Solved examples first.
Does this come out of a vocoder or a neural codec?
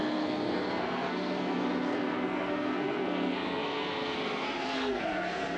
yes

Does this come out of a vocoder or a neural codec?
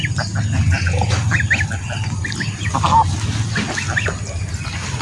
no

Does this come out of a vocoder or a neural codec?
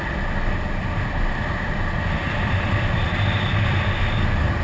no